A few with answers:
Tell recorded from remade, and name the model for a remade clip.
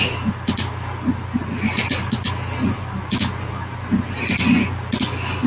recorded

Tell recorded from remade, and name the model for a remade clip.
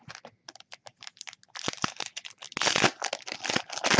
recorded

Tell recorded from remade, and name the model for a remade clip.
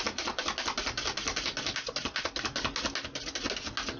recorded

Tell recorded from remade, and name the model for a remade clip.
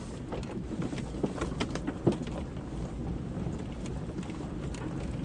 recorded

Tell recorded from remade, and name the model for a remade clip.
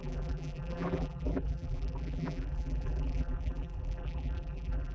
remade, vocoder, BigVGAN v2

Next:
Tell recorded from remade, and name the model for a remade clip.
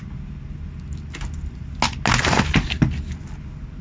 recorded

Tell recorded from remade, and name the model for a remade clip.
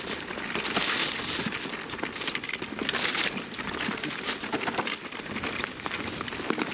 recorded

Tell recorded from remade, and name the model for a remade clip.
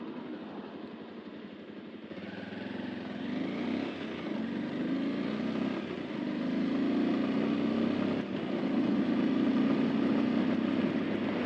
recorded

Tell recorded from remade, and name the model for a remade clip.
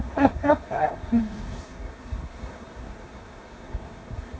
remade, codec, SNAC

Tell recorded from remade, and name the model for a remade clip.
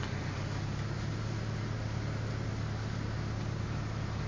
recorded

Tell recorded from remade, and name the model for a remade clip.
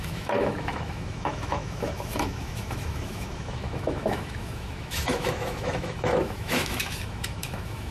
remade, autoencoder, DAC-VAE